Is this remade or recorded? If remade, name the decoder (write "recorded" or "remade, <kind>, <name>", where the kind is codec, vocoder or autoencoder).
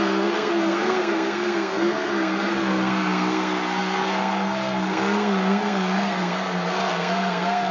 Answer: remade, codec, SNAC